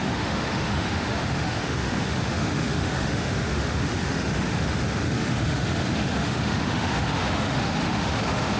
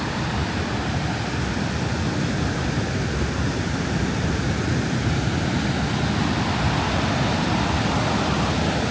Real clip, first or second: second